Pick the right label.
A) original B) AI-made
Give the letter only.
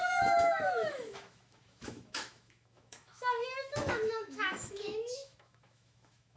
B